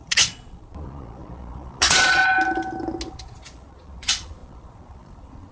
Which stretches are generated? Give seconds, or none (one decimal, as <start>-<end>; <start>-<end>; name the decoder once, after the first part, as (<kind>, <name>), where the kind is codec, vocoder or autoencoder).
0.0-2.2 (vocoder, Vocos); 3.1-5.5